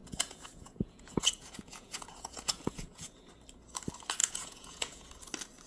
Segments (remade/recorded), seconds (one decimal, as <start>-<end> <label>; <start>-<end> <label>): 0.0-3.3 remade; 3.3-4.2 recorded; 4.2-5.1 remade; 5.1-5.7 recorded